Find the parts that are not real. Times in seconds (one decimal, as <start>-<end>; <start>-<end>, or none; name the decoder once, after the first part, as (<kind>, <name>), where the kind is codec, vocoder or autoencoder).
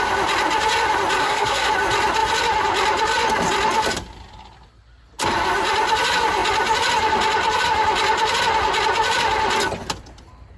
1.2-1.7 (codec, SNAC)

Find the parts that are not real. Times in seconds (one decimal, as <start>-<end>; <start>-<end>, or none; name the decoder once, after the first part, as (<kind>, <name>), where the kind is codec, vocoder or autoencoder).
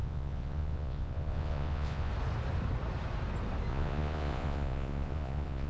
0.0-2.1 (vocoder, Vocos); 3.7-5.7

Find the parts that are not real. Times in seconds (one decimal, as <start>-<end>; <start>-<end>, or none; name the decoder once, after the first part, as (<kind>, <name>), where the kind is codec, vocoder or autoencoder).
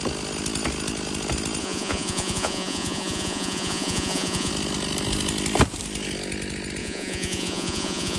1.6-4.5 (vocoder, Vocos); 6.8-8.2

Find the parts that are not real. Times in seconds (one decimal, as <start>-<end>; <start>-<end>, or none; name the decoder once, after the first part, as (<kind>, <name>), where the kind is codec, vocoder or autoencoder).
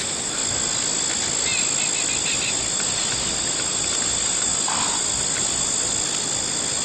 2.2-5.9 (vocoder, BigVGAN v2)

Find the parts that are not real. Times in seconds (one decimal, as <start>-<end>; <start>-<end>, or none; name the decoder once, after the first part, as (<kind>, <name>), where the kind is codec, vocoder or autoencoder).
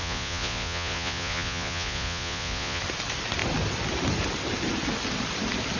0.0-2.8 (vocoder, Vocos)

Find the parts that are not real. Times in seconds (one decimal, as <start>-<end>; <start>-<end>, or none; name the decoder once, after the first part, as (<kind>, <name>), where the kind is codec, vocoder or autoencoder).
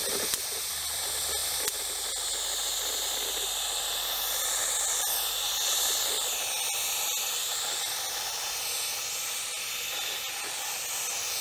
none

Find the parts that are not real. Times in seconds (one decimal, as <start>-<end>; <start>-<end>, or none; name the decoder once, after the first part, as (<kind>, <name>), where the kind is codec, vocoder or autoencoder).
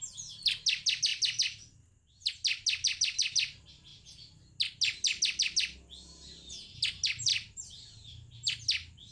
none